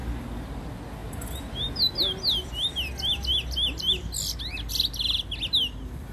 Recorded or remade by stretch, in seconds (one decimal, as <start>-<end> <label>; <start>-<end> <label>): 0.0-6.1 recorded